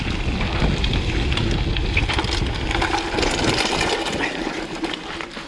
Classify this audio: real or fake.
real